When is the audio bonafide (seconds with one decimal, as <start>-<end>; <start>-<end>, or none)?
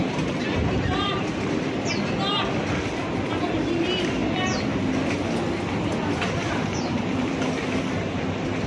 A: 1.1-4.2; 4.8-6.6; 7.3-8.7